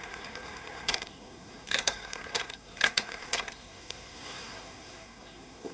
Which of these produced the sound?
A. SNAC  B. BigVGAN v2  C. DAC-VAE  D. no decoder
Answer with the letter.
A